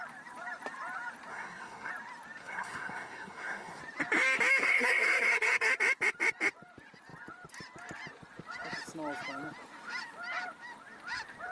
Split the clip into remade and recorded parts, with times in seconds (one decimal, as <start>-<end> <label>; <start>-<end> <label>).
0.0-1.3 recorded; 1.3-1.9 remade; 1.9-2.4 recorded; 2.4-3.8 remade; 3.8-4.6 recorded; 4.6-5.7 remade; 5.7-11.5 recorded